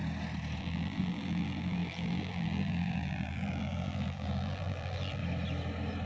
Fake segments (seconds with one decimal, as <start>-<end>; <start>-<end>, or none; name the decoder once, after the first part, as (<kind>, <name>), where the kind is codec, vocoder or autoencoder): 0.6-5.2 (vocoder, BigVGAN v2)